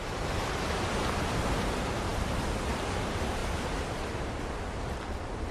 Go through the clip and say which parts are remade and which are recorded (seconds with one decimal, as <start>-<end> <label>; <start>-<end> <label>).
0.0-3.4 recorded; 3.4-4.4 remade; 4.4-5.5 recorded